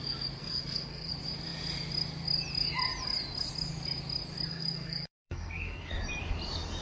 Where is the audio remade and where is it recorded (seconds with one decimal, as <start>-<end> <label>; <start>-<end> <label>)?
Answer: 0.0-0.4 recorded; 0.4-1.1 remade; 1.1-4.5 recorded; 4.5-6.0 remade; 6.0-6.8 recorded